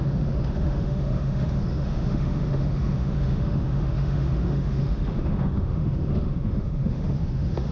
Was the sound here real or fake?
fake